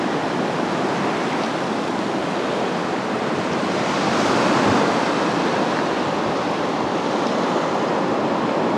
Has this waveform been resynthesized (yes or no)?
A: no